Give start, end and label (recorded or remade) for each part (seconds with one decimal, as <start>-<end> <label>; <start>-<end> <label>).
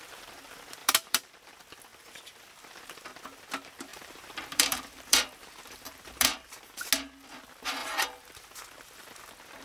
0.0-0.8 recorded; 0.8-1.3 remade; 1.3-3.9 recorded; 3.9-6.9 remade; 6.9-7.8 recorded; 7.8-8.6 remade; 8.6-9.6 recorded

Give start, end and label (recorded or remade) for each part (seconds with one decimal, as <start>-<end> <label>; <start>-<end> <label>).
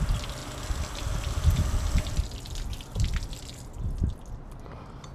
0.0-5.1 recorded